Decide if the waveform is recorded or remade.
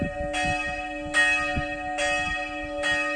recorded